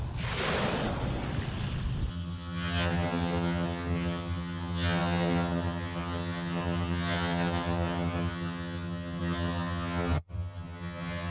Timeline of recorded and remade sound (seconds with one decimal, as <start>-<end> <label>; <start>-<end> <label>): 0.0-2.1 recorded; 2.1-11.3 remade

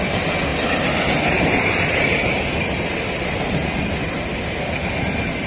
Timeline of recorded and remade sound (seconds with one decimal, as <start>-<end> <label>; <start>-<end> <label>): 0.0-5.5 recorded

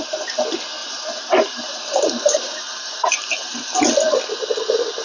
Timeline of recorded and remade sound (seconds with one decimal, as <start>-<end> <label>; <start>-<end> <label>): 0.0-0.8 recorded; 0.8-3.8 remade; 3.8-5.0 recorded

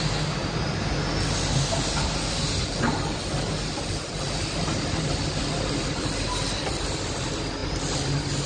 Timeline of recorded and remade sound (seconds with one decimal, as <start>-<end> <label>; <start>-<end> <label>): 0.0-8.5 recorded